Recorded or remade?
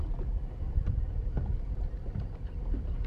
recorded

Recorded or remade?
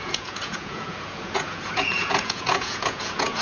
remade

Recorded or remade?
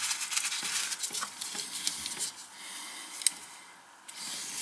recorded